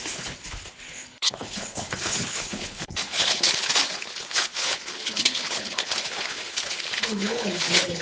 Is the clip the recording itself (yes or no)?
no